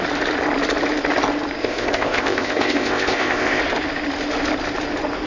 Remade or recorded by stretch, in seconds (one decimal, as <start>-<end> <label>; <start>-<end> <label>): 0.0-1.6 recorded; 1.6-3.6 remade; 3.6-5.3 recorded